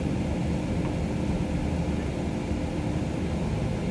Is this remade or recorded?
recorded